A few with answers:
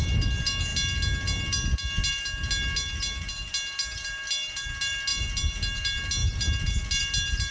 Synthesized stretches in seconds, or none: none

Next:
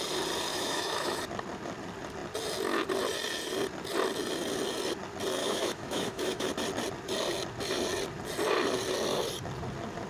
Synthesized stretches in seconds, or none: 0.5-1.2 (autoencoder, DAC-VAE); 5.4-6.5

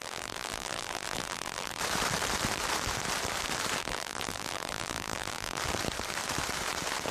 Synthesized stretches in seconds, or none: 0.0-1.8 (vocoder, BigVGAN v2); 3.8-5.6

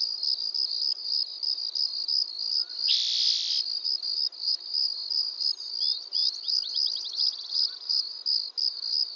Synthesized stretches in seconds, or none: none